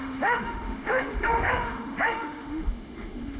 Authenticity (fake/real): fake